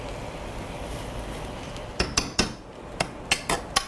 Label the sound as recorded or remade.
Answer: recorded